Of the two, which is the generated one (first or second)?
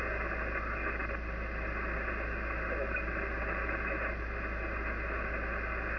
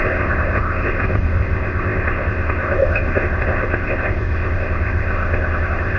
second